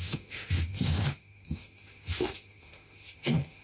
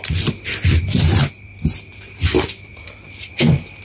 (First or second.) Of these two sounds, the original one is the second